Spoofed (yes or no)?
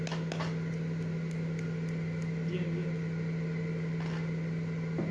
no